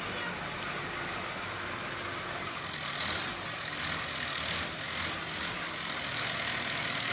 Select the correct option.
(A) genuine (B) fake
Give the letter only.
A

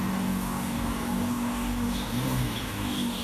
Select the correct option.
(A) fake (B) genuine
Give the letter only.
A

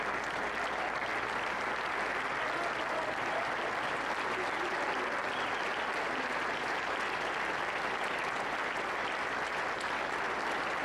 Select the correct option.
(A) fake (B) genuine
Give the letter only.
B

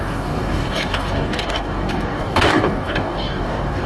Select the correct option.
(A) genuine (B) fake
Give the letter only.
B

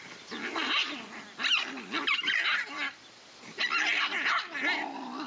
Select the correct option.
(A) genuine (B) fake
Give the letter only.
A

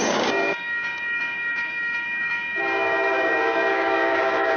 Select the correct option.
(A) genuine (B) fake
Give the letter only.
B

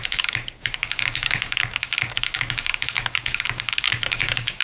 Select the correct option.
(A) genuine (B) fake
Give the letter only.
B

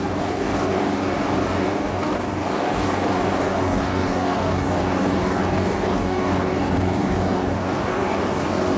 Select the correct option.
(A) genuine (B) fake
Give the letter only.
B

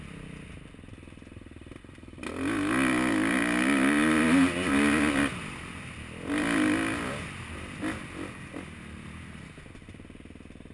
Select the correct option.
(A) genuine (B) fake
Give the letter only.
A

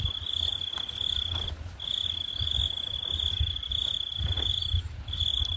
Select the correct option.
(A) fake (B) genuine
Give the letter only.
B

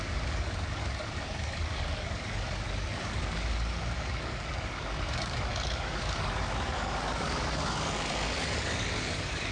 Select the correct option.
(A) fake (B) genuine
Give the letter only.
A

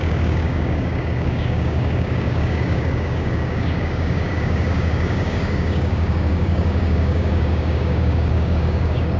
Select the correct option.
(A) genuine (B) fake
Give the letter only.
B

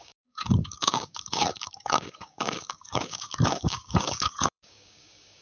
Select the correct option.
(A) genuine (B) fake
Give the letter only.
B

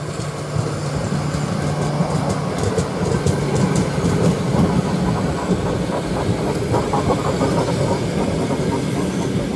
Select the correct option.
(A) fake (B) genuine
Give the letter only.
B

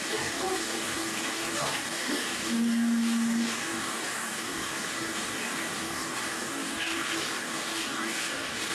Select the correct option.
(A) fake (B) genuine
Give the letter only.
A